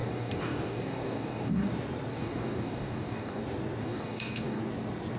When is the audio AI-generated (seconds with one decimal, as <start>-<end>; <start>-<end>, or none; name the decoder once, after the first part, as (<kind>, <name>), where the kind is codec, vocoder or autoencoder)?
0.0-1.7 (codec, DAC); 2.1-3.4; 3.8-4.6